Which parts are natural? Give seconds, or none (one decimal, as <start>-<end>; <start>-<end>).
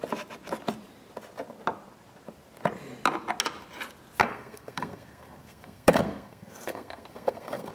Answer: 0.0-4.2